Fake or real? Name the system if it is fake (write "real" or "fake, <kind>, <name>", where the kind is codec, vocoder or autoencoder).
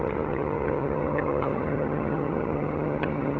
fake, vocoder, HiFi-GAN